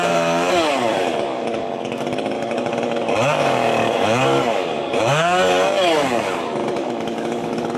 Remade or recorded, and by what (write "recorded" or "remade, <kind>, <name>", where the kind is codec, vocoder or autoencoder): remade, codec, DAC